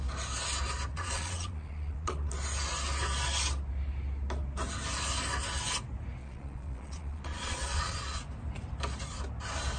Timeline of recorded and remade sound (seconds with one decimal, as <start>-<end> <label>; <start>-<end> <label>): 0.0-0.9 recorded; 0.9-2.3 remade; 2.3-6.2 recorded; 6.2-8.2 remade; 8.2-9.8 recorded

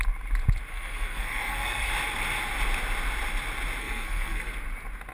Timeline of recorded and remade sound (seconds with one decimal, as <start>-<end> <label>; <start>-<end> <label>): 0.0-0.7 recorded; 0.7-1.9 remade; 1.9-3.8 recorded; 3.8-4.5 remade; 4.5-5.1 recorded